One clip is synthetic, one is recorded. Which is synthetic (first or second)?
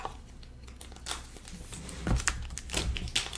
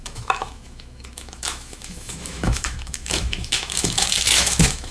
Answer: second